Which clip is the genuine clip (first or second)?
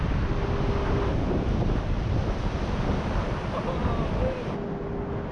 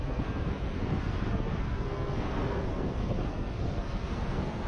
first